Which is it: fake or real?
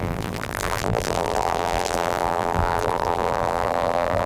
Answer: fake